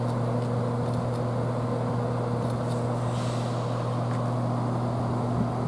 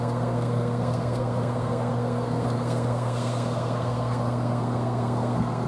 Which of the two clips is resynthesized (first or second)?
second